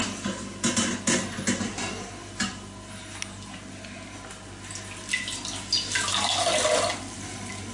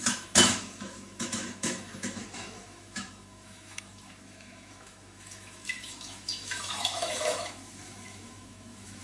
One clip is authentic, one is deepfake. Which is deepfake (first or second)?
second